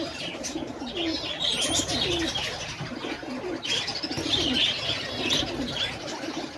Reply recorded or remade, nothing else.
recorded